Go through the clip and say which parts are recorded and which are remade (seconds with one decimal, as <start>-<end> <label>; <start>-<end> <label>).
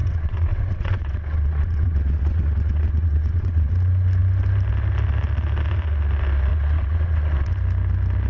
0.0-3.7 remade; 3.7-6.5 recorded; 6.5-7.5 remade; 7.5-8.3 recorded